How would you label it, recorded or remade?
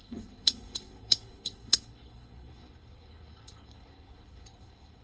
remade